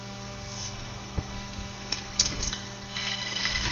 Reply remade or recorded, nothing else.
remade